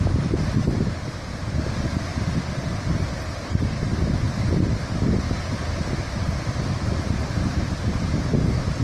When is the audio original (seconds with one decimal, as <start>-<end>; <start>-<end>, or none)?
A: 2.1-6.6